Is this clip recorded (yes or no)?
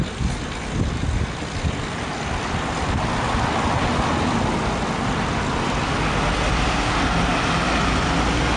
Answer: yes